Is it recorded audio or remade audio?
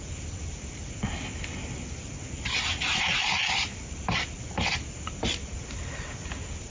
recorded